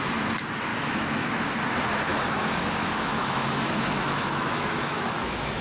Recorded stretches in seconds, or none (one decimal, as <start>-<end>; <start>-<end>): 0.0-0.7; 1.4-2.1